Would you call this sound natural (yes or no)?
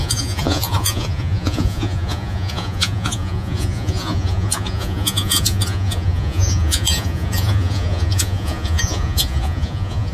no